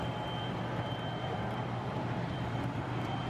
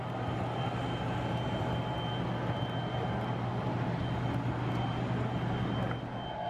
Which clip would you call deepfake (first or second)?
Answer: first